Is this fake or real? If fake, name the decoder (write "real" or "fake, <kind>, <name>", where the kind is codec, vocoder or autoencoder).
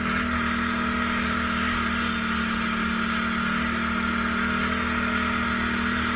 real